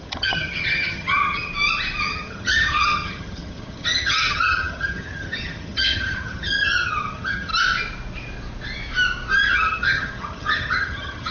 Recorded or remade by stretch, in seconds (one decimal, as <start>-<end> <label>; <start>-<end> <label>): 0.0-1.5 remade; 1.5-2.0 recorded; 2.0-7.5 remade; 7.5-9.5 recorded; 9.5-11.3 remade